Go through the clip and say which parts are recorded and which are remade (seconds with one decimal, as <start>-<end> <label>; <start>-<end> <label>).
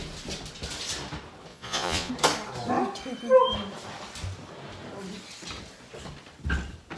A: 0.0-1.5 recorded; 1.5-2.1 remade; 2.1-7.0 recorded